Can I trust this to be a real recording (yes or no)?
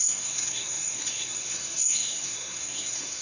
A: no